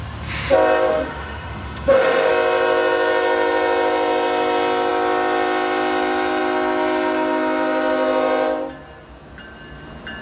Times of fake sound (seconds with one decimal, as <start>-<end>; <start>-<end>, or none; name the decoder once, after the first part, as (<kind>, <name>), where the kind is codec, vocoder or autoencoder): 0.9-2.3 (autoencoder, DAC-VAE)